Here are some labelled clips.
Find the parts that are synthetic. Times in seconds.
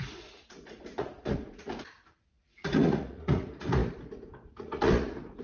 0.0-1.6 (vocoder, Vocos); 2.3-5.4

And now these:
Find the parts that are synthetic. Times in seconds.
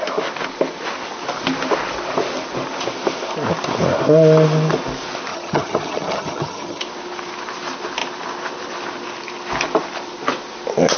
5.3-6.8 (vocoder, HiFi-GAN)